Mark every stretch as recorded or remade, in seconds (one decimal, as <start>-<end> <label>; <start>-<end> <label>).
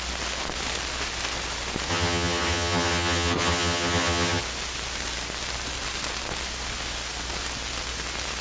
0.0-1.9 recorded; 1.9-4.4 remade; 4.4-8.4 recorded